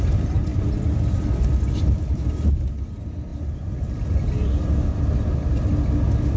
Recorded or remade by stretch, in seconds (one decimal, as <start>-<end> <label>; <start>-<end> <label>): 0.0-6.4 recorded